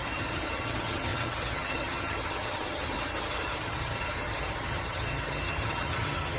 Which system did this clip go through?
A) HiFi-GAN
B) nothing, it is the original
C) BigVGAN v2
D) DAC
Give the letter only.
A